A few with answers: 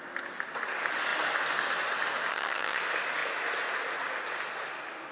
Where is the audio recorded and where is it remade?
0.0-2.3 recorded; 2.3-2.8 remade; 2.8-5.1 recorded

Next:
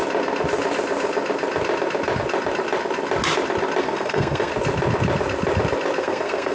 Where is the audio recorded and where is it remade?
0.0-3.8 recorded; 3.8-4.5 remade; 4.5-6.0 recorded; 6.0-6.5 remade

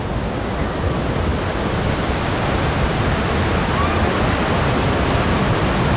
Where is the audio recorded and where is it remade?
0.0-6.0 recorded

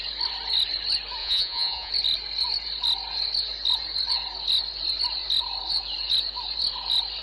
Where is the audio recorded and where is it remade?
0.0-1.2 recorded; 1.2-1.9 remade; 1.9-7.2 recorded